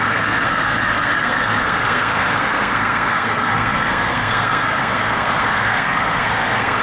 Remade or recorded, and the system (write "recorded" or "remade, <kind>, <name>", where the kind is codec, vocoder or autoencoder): remade, codec, SNAC